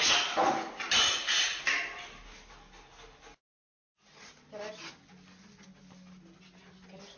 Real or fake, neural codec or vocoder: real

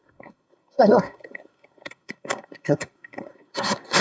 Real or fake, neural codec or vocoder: fake, codec, SNAC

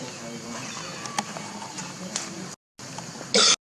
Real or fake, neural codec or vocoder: real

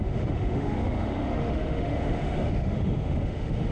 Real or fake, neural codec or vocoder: fake, autoencoder, DAC-VAE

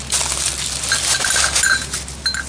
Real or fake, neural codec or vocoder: real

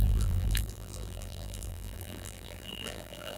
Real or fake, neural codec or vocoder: fake, vocoder, BigVGAN v2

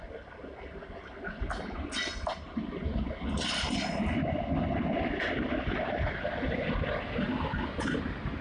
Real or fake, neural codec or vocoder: real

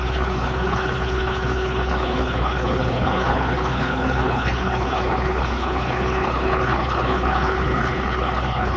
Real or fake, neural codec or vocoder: fake, codec, HILCodec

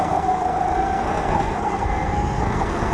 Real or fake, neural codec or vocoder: fake, codec, SNAC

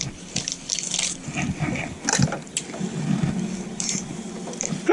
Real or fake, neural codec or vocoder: real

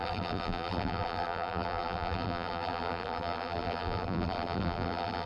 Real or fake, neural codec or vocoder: fake, vocoder, BigVGAN v2